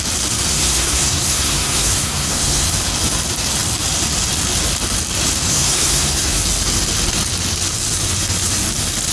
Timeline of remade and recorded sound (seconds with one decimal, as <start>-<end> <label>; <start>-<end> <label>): 0.0-0.5 recorded; 0.5-2.7 remade; 2.7-5.5 recorded; 5.5-6.4 remade; 6.4-9.1 recorded

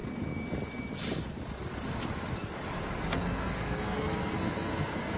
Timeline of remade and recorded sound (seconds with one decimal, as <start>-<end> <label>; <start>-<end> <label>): 0.0-3.1 recorded; 3.1-5.2 remade

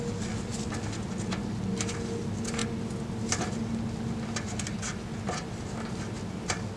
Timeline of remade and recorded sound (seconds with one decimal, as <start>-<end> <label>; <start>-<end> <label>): 0.0-6.8 recorded

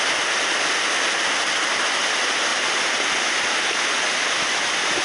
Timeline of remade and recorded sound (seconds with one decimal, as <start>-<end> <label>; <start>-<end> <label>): 0.0-5.0 recorded